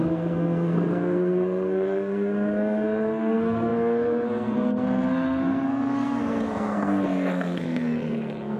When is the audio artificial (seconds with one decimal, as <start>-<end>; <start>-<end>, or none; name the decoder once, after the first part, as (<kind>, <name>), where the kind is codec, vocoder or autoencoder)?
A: 0.0-8.6 (codec, SNAC)